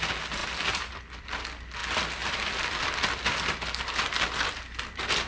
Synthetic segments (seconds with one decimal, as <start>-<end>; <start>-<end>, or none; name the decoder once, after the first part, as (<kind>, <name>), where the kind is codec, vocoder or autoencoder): 0.4-1.0 (vocoder, BigVGAN v2); 1.8-2.8